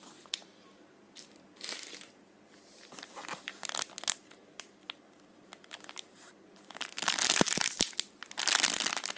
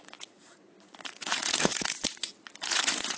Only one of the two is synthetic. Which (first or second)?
second